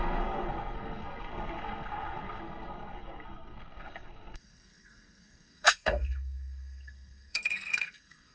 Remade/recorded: remade